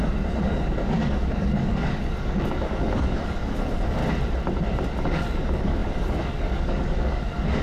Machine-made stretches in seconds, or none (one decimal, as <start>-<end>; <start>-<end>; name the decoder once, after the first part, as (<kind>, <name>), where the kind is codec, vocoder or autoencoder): 0.0-4.0 (codec, DAC); 5.0-7.6